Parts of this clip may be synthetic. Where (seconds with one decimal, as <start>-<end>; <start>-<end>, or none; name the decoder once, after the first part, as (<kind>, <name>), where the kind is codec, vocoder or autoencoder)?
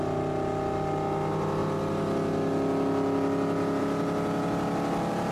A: none